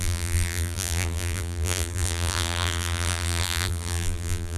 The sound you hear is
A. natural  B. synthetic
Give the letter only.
B